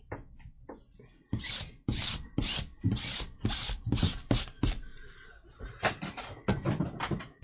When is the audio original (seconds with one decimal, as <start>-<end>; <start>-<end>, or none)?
0.0-7.4